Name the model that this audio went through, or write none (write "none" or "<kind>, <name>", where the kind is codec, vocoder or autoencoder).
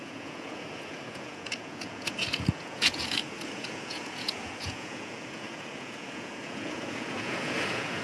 vocoder, Vocos